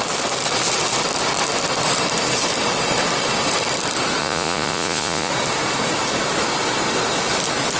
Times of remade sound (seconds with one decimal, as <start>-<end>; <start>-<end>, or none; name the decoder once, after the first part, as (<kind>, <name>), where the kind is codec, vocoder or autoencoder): 4.2-5.3 (vocoder, Vocos)